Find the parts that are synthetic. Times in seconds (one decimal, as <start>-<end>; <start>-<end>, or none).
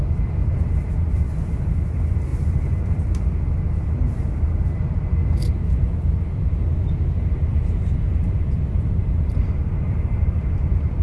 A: 2.3-3.0; 7.5-11.0